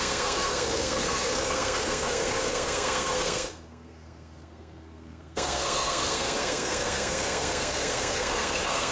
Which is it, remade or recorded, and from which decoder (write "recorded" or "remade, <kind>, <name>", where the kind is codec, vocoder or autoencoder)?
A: remade, codec, SNAC